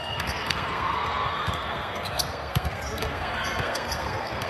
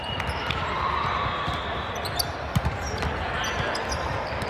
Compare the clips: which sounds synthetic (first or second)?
first